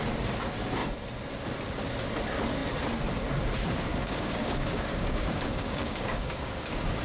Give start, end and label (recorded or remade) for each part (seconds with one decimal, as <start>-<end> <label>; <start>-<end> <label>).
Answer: 0.0-3.9 recorded; 3.9-7.0 remade